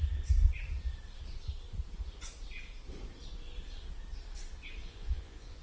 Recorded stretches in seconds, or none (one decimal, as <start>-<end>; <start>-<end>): 0.0-4.8